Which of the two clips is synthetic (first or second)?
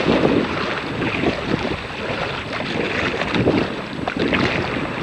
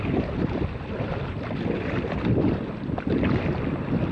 second